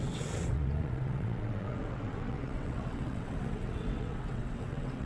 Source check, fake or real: fake